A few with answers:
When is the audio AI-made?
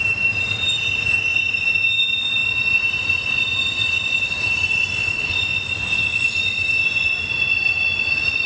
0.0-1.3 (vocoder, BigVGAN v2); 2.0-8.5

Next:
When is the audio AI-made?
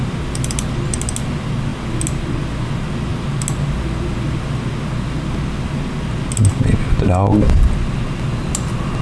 none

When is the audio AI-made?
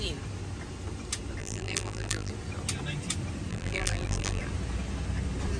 1.4-2.3 (vocoder, BigVGAN v2); 3.5-4.4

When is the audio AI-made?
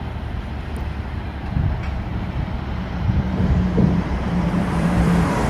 2.1-5.5 (vocoder, BigVGAN v2)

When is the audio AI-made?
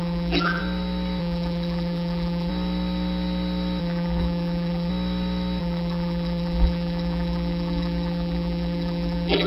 0.0-0.6 (vocoder, BigVGAN v2); 1.2-2.5; 3.8-4.9; 5.6-9.5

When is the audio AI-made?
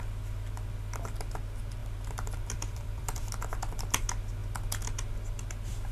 1.8-3.3 (vocoder, BigVGAN v2)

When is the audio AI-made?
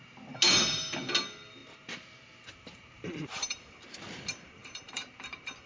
1.6-3.7 (vocoder, BigVGAN v2); 4.6-5.7